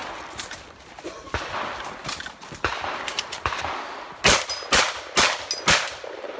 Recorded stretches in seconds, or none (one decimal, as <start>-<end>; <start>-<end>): 0.0-6.4